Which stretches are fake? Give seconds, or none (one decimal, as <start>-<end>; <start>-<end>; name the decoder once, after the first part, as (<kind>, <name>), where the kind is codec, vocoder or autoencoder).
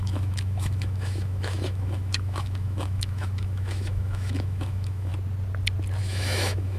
0.0-5.1 (autoencoder, DAC-VAE); 6.0-6.8